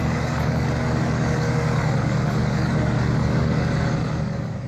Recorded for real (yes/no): no